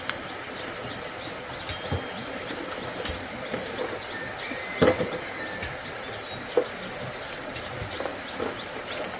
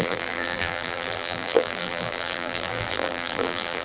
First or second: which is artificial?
second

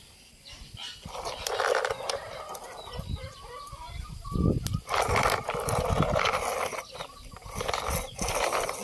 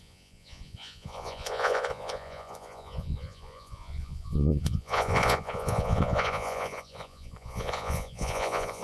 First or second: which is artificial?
second